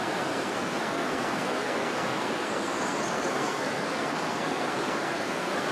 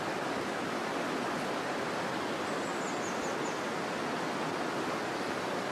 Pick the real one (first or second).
second